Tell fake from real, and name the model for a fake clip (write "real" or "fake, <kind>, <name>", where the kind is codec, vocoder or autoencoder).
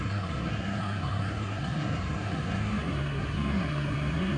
fake, codec, SNAC